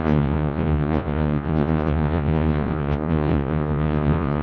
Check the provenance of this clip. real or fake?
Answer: fake